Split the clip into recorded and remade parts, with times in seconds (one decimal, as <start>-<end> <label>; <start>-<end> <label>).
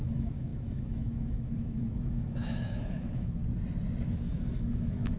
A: 0.0-3.4 remade; 3.4-4.1 recorded; 4.1-5.2 remade